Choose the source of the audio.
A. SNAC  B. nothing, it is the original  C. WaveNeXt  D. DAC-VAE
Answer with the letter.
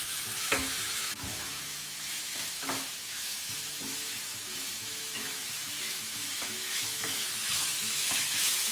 D